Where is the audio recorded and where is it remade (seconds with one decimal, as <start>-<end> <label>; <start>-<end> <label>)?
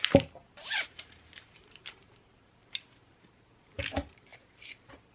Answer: 0.0-5.1 remade